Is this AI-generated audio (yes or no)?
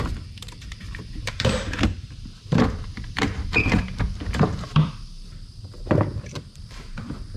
yes